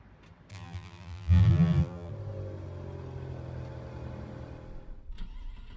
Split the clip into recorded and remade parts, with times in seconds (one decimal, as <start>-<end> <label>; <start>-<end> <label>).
0.0-0.5 recorded; 0.5-2.1 remade; 2.1-5.8 recorded